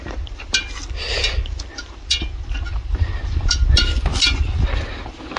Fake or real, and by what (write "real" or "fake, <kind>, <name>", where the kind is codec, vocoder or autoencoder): real